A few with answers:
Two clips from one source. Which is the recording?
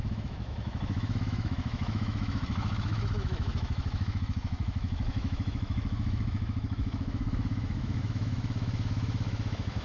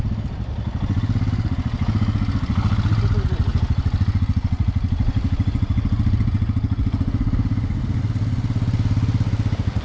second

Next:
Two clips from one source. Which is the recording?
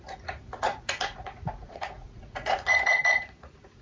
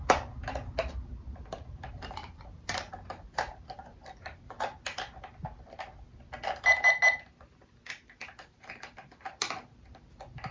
second